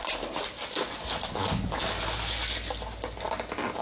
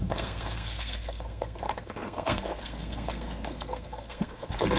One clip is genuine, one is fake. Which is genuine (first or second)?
first